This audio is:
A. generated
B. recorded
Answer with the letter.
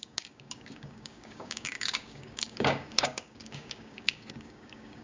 A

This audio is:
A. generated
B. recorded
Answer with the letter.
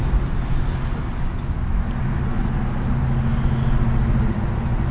B